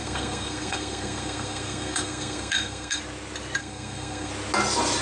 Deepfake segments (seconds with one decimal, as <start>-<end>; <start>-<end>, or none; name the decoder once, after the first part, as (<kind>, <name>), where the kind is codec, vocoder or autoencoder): 0.0-3.0 (codec, SNAC); 3.6-4.3